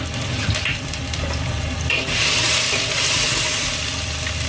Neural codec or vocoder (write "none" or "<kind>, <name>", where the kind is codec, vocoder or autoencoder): vocoder, BigVGAN v2